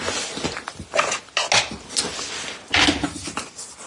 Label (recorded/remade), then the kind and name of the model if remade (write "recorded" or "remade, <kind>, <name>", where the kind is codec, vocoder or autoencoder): recorded